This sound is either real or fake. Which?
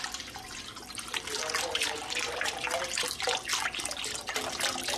real